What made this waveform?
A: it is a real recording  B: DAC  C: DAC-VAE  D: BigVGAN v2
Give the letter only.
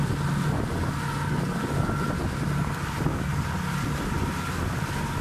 A